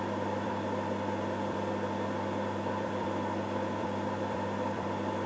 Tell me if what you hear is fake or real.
fake